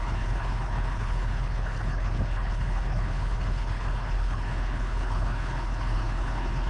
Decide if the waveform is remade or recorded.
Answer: remade